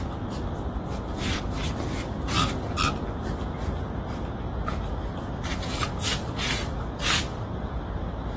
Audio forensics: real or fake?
real